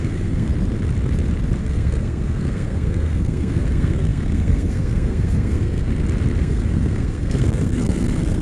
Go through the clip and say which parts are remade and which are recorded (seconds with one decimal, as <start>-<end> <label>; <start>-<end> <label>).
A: 0.0-0.5 remade; 0.5-1.6 recorded; 1.6-5.9 remade; 5.9-6.4 recorded; 6.4-8.4 remade